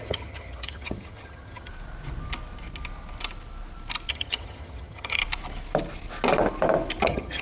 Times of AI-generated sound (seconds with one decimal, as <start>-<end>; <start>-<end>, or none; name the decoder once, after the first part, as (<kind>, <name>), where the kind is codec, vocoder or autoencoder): 0.0-1.7 (vocoder, HiFi-GAN); 4.1-5.2; 7.0-7.4